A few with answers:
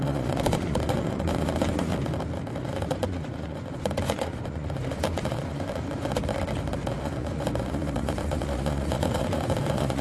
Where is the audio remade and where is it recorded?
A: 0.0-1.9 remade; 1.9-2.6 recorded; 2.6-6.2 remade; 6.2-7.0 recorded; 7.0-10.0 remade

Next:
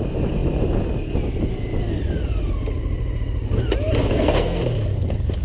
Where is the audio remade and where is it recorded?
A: 0.0-4.1 recorded; 4.1-4.6 remade; 4.6-5.4 recorded

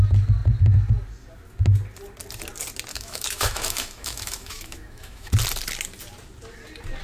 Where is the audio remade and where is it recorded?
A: 0.0-2.9 recorded; 2.9-5.3 remade; 5.3-7.0 recorded

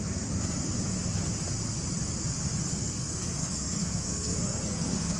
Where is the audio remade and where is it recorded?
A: 0.0-2.7 recorded; 2.7-5.2 remade